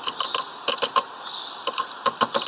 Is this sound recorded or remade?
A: remade